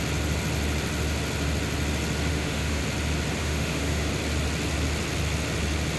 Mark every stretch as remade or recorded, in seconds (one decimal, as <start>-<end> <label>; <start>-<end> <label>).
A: 0.0-2.3 recorded; 2.3-2.8 remade; 2.8-3.4 recorded; 3.4-4.1 remade; 4.1-6.0 recorded